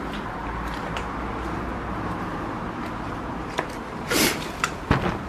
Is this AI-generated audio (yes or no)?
no